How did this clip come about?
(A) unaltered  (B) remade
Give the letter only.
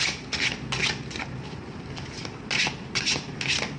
A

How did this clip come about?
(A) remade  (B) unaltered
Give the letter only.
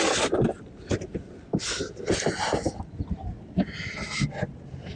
B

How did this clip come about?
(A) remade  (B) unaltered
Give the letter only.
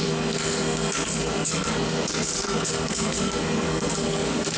A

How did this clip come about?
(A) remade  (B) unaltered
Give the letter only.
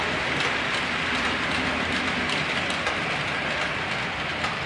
B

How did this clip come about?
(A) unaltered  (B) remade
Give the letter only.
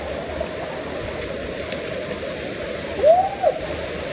A